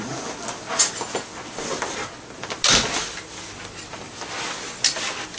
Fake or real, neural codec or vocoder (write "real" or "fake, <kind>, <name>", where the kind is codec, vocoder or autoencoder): real